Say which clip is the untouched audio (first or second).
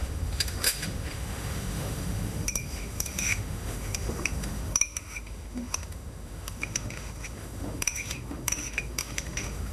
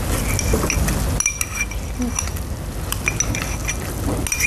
second